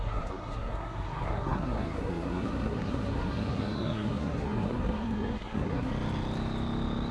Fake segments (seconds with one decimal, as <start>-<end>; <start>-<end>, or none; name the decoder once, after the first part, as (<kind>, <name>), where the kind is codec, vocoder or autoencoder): 0.0-5.9 (codec, SNAC)